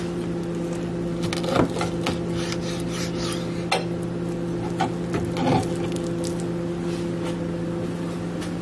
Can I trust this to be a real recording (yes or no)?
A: yes